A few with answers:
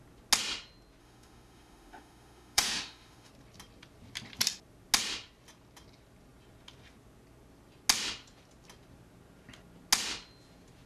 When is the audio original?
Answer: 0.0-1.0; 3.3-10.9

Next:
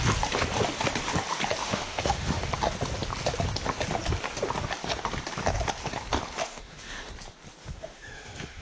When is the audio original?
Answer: 0.0-1.6; 2.5-6.4; 7.1-7.6

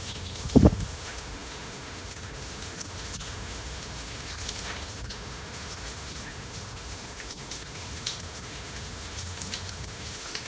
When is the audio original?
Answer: none

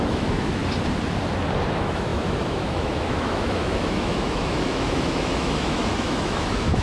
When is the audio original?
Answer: 0.6-1.7